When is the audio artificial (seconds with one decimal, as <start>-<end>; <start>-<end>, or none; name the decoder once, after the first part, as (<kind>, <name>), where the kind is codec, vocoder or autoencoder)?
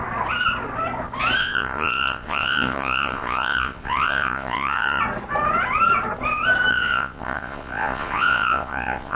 1.4-5.0 (vocoder, Vocos); 6.7-9.2